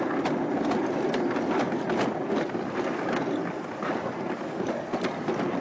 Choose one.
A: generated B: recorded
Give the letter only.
B